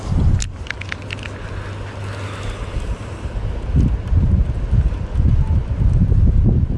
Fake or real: real